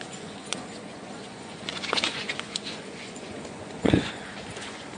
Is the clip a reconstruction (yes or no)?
yes